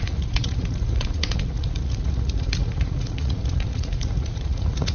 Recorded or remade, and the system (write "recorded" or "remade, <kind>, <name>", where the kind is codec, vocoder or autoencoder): remade, vocoder, Vocos